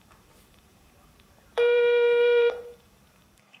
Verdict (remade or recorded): remade